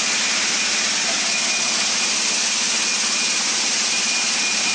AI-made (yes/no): no